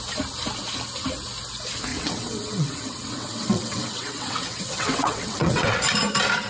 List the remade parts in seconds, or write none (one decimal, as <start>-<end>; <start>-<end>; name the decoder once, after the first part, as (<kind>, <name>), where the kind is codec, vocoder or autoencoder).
1.9-5.8 (vocoder, WaveNeXt)